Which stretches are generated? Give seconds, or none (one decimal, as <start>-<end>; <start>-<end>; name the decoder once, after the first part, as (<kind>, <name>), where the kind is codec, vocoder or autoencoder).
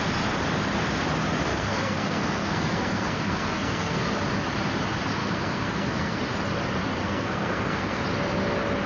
1.5-4.1 (codec, SNAC); 5.2-6.2; 7.0-8.0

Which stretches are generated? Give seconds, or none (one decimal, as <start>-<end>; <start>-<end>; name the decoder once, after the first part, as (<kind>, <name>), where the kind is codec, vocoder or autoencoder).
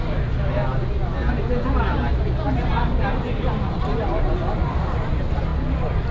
none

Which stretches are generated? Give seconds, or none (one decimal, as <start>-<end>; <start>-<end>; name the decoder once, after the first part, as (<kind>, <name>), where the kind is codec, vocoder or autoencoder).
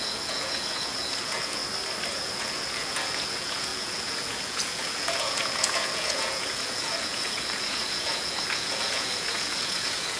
0.0-1.6 (vocoder, Vocos); 2.1-10.2